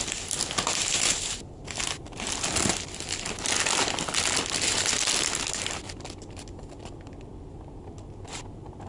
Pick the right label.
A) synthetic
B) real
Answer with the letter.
B